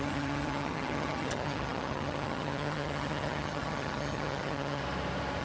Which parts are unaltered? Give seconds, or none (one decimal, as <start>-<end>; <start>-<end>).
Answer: 4.8-5.4